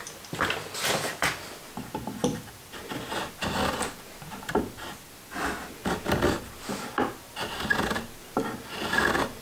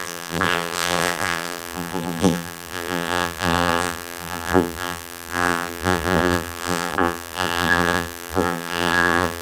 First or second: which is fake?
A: second